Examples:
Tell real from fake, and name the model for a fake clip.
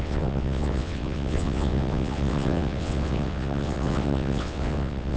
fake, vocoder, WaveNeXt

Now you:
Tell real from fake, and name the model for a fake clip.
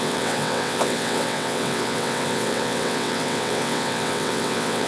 fake, vocoder, WaveNeXt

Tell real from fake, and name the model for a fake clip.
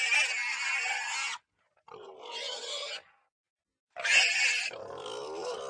real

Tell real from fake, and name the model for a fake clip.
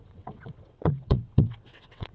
fake, vocoder, WaveNeXt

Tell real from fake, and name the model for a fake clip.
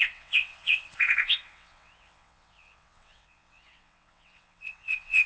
fake, vocoder, WaveNeXt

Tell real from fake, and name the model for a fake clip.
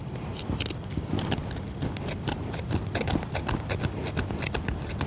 real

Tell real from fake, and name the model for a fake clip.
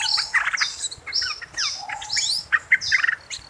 real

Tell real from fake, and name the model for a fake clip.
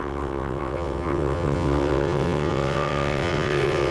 fake, vocoder, WaveNeXt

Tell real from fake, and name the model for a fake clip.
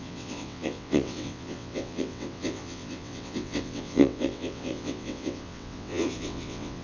fake, vocoder, WaveNeXt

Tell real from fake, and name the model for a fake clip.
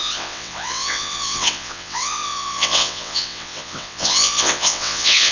fake, vocoder, WaveNeXt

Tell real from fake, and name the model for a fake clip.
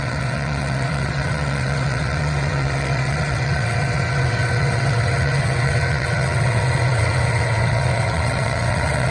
fake, vocoder, WaveNeXt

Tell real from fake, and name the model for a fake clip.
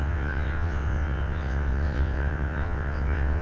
fake, vocoder, WaveNeXt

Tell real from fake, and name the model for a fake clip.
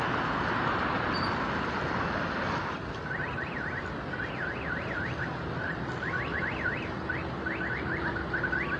real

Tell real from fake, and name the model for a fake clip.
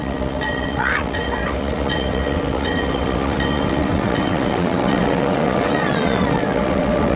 fake, vocoder, WaveNeXt